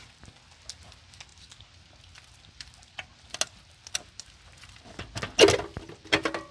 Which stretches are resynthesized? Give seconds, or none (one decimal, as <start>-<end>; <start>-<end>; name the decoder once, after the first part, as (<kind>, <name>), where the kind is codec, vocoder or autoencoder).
none

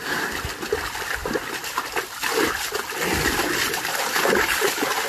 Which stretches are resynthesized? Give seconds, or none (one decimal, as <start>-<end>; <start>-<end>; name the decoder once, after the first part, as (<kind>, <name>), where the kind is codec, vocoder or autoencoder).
none

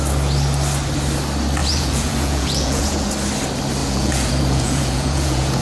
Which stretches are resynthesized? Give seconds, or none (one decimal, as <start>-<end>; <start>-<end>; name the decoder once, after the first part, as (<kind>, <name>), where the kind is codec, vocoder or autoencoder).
1.6-3.1 (vocoder, Vocos); 3.8-5.6